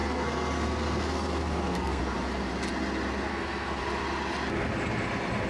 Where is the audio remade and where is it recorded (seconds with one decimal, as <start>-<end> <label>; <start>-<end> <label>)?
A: 0.0-2.0 remade; 2.0-3.3 recorded; 3.3-3.8 remade; 3.8-5.5 recorded